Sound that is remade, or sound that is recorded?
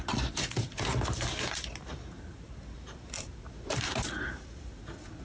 recorded